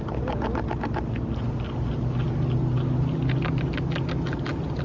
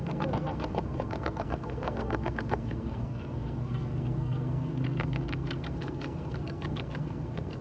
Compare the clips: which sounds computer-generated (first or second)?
second